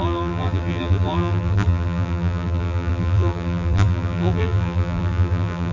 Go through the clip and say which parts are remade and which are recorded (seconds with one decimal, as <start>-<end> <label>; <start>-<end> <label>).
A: 0.0-5.7 remade